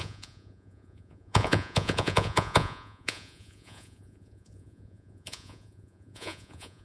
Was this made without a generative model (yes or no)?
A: no